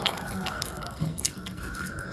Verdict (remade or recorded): remade